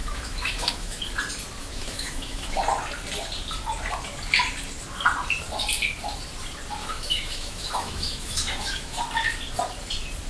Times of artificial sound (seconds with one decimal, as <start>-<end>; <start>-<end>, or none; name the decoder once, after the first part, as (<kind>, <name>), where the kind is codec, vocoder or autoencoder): 0.0-1.0 (autoencoder, DAC-VAE); 1.6-2.6; 6.8-9.0